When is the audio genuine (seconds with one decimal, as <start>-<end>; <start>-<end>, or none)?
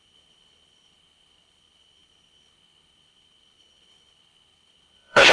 none